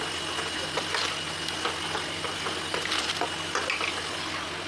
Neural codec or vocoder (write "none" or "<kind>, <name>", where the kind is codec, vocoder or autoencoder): none